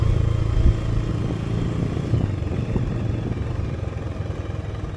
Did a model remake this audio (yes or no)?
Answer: no